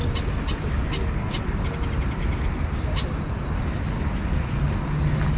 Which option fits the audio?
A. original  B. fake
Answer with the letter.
A